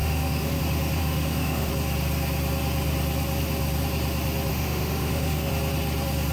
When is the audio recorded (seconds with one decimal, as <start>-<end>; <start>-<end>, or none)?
0.6-1.0; 1.7-4.5; 5.5-6.3